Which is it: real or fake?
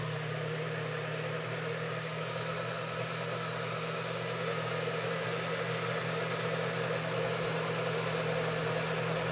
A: real